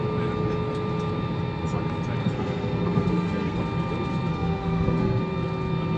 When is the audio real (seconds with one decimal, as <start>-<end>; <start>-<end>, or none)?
0.0-2.2; 3.6-4.3; 5.2-6.0